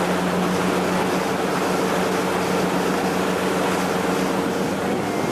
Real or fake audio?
real